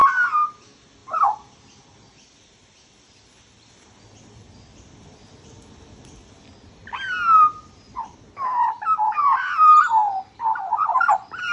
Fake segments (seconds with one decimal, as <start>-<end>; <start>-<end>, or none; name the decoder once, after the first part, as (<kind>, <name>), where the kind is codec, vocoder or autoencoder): none

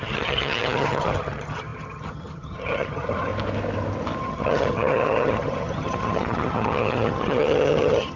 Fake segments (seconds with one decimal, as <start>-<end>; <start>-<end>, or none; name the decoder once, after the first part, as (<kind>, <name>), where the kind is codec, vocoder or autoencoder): 0.0-3.3 (vocoder, HiFi-GAN); 4.2-8.2

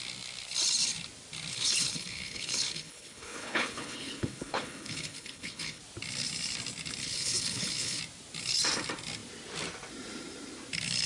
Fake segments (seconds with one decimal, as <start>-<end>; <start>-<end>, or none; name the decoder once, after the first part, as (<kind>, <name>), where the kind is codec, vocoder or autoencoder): 1.5-5.8 (codec, HILCodec); 7.0-8.0

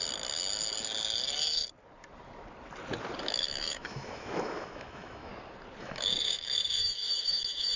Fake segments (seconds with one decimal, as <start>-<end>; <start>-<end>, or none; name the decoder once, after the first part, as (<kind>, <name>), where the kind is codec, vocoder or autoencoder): 3.2-5.3 (autoencoder, DAC-VAE); 5.8-7.8

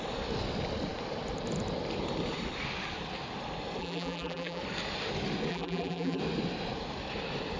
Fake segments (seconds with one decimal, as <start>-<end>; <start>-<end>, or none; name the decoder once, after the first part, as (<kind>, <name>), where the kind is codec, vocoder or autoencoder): 3.8-4.6 (vocoder, BigVGAN v2); 5.5-6.2